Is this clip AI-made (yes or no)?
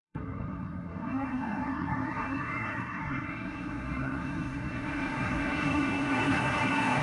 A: yes